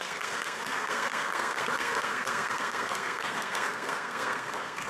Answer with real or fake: fake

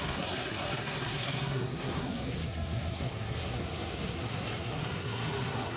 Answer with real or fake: fake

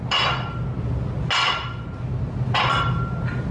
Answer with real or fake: real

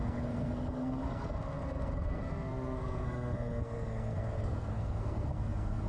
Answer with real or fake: fake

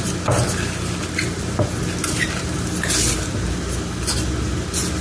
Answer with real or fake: real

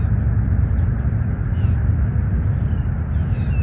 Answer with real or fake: real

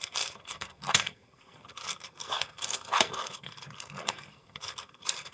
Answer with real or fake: fake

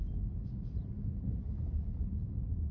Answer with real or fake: real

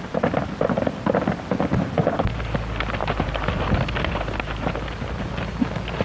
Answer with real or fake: real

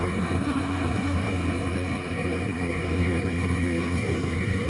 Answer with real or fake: fake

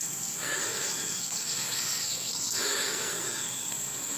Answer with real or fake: fake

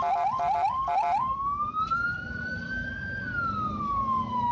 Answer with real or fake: real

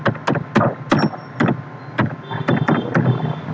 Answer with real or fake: real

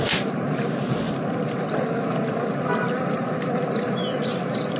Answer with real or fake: real